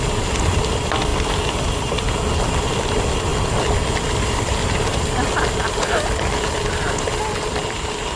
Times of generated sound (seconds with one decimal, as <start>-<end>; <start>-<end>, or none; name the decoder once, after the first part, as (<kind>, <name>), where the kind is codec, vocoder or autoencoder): none